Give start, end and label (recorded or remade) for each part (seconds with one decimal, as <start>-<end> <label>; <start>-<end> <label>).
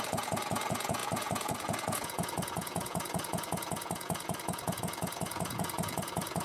0.0-6.4 remade